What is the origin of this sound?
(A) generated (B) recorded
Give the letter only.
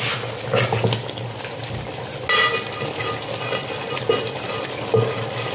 B